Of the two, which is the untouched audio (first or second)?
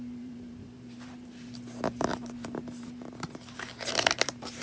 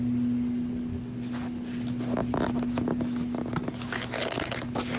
second